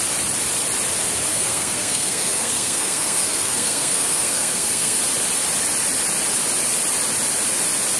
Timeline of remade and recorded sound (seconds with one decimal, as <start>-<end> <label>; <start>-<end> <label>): 0.0-1.3 recorded; 1.3-5.0 remade; 5.0-8.0 recorded